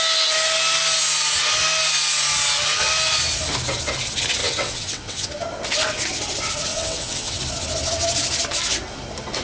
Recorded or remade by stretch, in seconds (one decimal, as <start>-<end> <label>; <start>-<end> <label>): 0.0-4.4 recorded; 4.4-5.3 remade; 5.3-6.7 recorded; 6.7-7.4 remade; 7.4-9.4 recorded

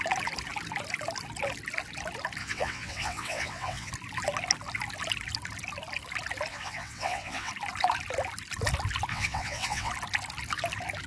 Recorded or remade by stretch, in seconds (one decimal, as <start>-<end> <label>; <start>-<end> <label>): 0.0-2.4 recorded; 2.4-3.9 remade; 3.9-6.5 recorded; 6.5-7.5 remade; 7.5-9.1 recorded; 9.1-9.9 remade; 9.9-11.1 recorded

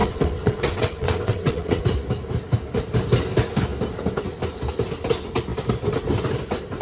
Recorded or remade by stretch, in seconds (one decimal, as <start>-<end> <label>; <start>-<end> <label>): 0.0-1.8 remade; 1.8-6.8 recorded

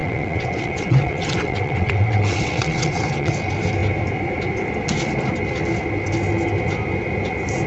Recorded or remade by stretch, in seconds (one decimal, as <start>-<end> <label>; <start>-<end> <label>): 0.0-3.3 remade; 3.3-7.7 recorded

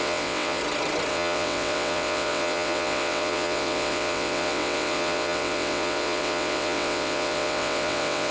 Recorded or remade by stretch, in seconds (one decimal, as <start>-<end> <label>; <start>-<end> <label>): 0.0-0.6 remade; 0.6-1.1 recorded; 1.1-8.3 remade

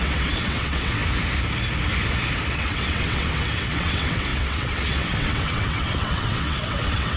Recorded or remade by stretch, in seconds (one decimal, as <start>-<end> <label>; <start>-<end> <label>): 0.0-1.0 remade; 1.0-2.5 recorded; 2.5-7.2 remade

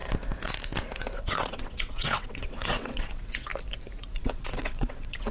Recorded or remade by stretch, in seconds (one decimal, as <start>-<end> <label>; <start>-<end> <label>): 0.0-1.2 recorded; 1.2-3.5 remade; 3.5-4.2 recorded; 4.2-5.3 remade

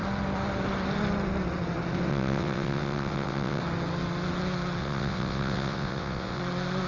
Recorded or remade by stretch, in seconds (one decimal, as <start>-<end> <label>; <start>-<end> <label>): 0.0-2.1 recorded; 2.1-3.6 remade; 3.6-4.8 recorded; 4.8-6.4 remade; 6.4-6.9 recorded